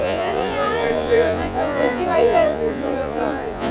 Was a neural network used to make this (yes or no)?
yes